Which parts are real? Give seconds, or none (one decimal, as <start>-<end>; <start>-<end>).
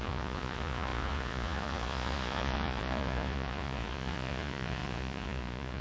none